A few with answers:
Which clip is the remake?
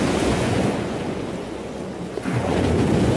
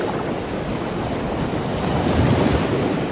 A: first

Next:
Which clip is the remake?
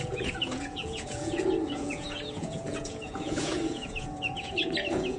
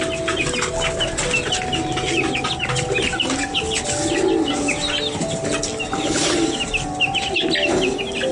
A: first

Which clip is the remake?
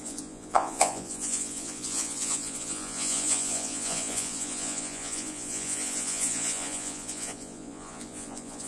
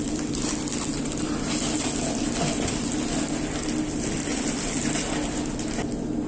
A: first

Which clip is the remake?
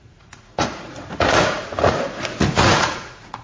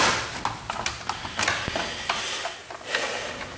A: first